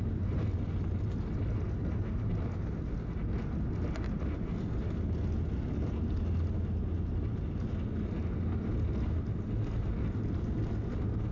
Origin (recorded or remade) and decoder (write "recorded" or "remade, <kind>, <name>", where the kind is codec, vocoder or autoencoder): recorded